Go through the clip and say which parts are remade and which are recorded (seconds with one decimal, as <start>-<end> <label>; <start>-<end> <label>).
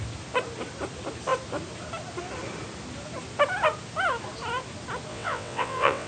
0.0-5.1 recorded; 5.1-6.1 remade